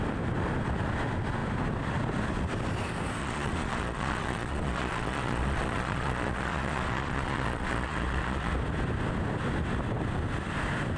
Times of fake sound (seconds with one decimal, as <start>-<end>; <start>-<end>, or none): 3.2-8.5

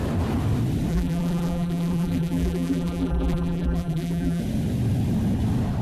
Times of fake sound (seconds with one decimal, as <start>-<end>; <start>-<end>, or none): 0.9-4.4

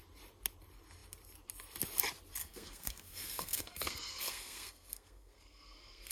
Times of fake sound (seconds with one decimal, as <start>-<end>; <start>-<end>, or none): 2.4-6.1